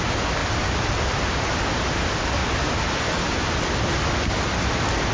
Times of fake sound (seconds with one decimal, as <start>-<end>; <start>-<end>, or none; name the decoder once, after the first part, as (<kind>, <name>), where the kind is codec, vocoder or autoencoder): 0.4-1.9 (vocoder, BigVGAN v2); 2.4-3.3